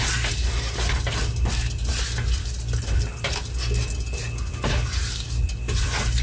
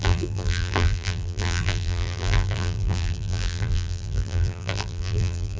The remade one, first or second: second